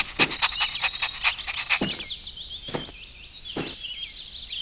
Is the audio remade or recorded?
recorded